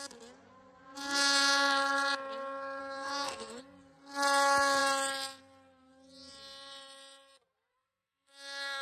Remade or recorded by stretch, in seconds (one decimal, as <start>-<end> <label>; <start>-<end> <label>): 0.0-2.8 recorded; 2.8-3.6 remade; 3.6-7.7 recorded; 7.7-8.8 remade

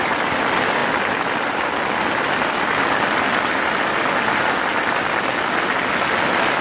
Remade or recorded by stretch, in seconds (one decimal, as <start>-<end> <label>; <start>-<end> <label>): 0.0-6.6 recorded

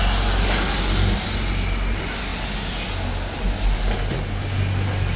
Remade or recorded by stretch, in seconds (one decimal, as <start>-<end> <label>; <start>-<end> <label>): 0.0-5.2 recorded

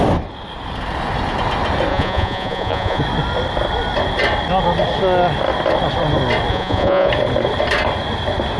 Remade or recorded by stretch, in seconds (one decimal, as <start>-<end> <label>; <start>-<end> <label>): 0.0-1.9 recorded; 1.9-3.0 remade; 3.0-6.5 recorded; 6.5-7.1 remade; 7.1-8.6 recorded

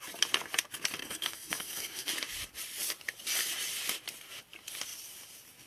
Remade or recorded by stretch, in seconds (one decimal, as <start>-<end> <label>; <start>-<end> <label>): 0.0-1.0 recorded; 1.0-2.1 remade; 2.1-5.7 recorded

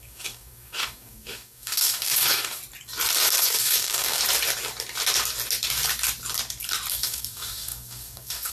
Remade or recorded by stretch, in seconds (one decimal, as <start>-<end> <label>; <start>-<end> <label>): 0.0-2.6 remade; 2.6-3.4 recorded; 3.4-4.2 remade; 4.2-6.9 recorded; 6.9-8.5 remade